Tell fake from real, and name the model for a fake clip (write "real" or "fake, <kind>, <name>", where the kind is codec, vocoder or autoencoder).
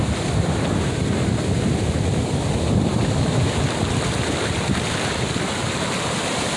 real